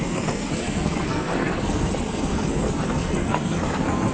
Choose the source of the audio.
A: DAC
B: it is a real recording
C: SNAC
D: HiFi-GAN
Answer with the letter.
C